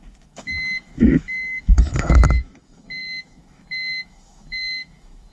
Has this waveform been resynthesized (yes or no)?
yes